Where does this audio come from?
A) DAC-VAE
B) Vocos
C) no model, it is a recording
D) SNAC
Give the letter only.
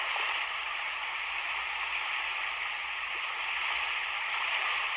C